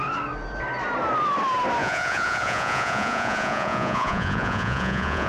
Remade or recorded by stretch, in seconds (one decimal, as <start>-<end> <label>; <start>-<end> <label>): 0.0-1.8 recorded; 1.8-5.3 remade